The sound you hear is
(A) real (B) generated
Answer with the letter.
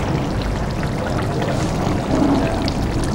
A